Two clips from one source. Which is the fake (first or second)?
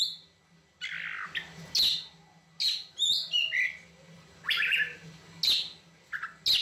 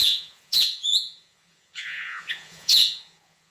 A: second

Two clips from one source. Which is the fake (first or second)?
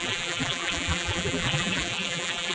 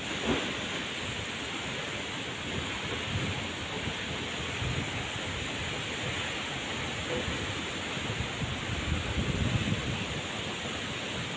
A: first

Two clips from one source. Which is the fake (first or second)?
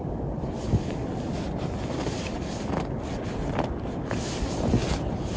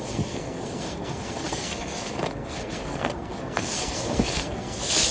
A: second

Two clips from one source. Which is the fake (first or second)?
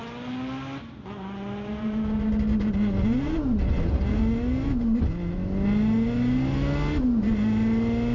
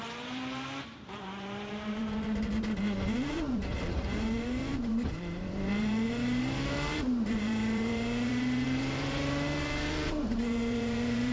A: second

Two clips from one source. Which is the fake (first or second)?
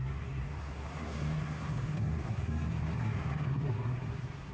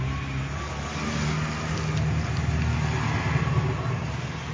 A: first